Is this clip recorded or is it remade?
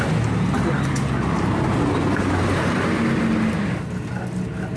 recorded